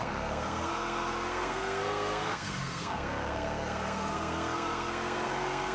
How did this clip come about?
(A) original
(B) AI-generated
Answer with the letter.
B